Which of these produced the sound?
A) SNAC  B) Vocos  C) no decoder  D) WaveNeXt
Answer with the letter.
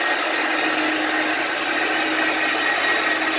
C